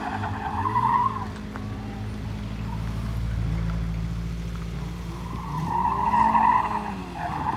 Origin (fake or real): real